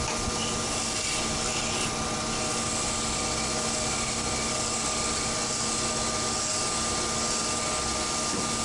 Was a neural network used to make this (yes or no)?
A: no